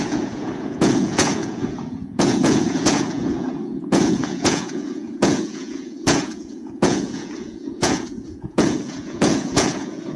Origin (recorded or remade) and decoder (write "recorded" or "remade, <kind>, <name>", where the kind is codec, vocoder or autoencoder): remade, vocoder, Vocos